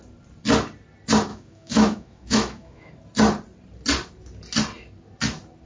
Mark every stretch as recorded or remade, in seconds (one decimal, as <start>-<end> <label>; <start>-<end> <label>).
0.0-1.3 recorded; 1.3-2.9 remade; 2.9-5.7 recorded